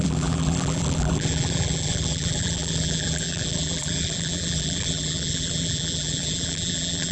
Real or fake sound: fake